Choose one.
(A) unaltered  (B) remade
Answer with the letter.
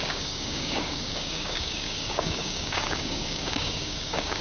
B